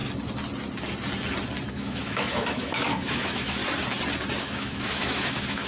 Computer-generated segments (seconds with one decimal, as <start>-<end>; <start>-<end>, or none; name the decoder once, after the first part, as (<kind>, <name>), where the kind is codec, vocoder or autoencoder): 1.7-3.6 (autoencoder, DAC-VAE); 4.4-5.7

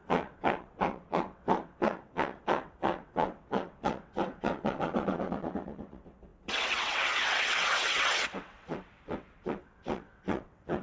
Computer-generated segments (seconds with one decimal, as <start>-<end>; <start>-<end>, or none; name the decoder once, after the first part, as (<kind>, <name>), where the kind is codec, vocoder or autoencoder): 0.0-10.8 (vocoder, WaveNeXt)

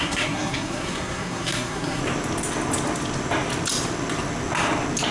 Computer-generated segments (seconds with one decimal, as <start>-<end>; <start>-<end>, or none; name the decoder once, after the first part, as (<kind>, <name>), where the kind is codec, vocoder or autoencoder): 0.0-2.0 (codec, SNAC)

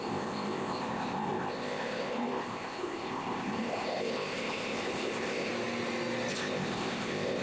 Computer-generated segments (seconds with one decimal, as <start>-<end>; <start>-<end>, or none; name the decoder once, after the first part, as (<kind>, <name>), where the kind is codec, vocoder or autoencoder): 0.0-5.5 (codec, ZipCodec); 6.3-7.4

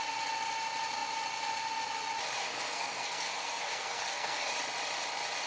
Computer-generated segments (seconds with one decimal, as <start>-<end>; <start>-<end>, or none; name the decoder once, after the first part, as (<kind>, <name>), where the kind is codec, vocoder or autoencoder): 2.4-4.5 (codec, SNAC)

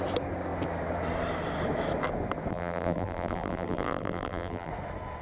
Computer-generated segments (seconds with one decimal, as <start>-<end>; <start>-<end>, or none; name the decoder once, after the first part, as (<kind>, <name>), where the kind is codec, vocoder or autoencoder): 2.5-4.7 (vocoder, BigVGAN v2)

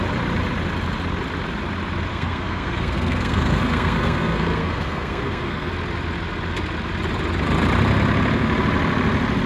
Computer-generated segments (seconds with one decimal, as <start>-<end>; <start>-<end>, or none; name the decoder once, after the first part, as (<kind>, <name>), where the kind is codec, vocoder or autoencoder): 2.1-5.7 (codec, SNAC)